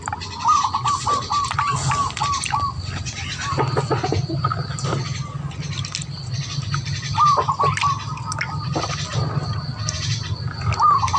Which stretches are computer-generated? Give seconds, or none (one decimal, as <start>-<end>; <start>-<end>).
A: none